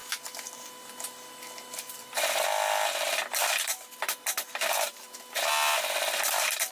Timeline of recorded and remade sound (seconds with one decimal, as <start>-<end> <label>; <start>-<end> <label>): 0.0-6.7 recorded